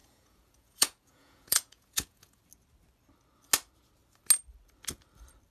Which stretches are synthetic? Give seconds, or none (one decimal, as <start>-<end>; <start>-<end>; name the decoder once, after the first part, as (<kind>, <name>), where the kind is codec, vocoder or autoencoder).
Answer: 0.0-2.4 (vocoder, Vocos)